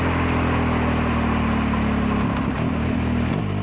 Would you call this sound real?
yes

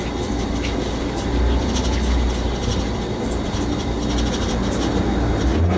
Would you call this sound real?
yes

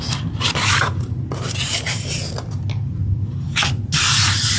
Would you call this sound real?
yes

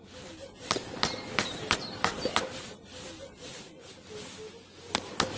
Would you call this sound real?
yes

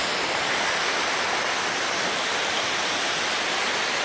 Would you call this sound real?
yes